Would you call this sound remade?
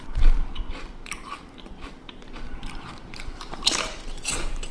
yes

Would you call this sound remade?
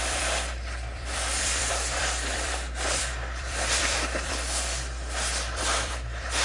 yes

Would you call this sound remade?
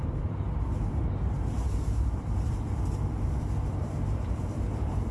yes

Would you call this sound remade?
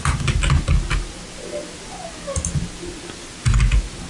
no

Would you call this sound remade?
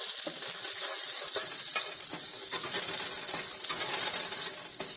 no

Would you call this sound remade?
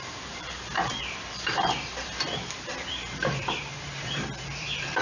yes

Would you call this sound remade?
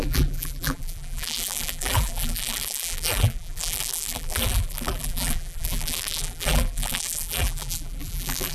yes